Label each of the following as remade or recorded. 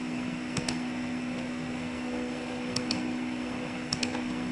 remade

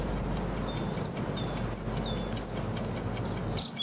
recorded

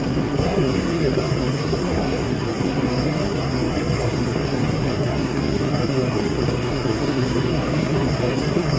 remade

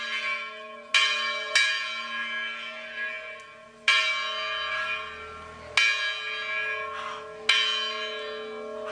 recorded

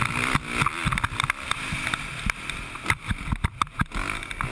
recorded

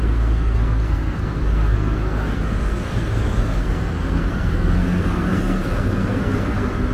remade